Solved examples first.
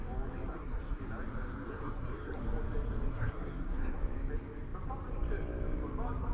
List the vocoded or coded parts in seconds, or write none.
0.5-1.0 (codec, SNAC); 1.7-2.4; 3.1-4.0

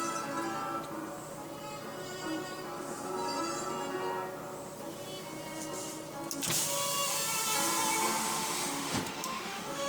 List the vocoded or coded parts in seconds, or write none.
8.2-9.9 (autoencoder, DAC-VAE)

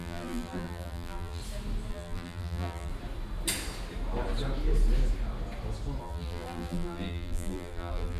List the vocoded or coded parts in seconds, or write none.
0.0-1.4 (vocoder, BigVGAN v2); 1.9-2.9; 6.0-8.2